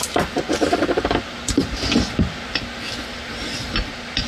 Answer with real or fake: real